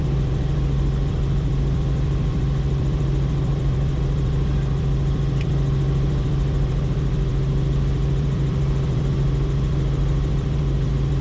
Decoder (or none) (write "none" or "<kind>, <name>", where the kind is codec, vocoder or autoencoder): vocoder, BigVGAN v2